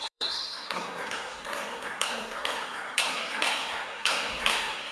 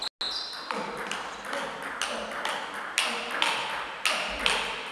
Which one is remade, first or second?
first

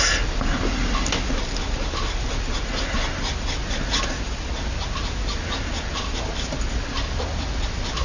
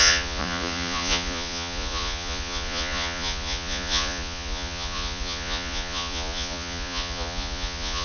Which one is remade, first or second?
second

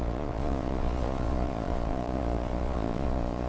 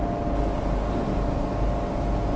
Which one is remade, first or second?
first